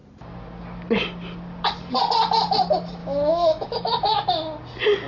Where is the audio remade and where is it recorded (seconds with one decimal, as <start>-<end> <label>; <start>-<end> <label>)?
0.0-3.0 recorded; 3.0-4.3 remade; 4.3-5.1 recorded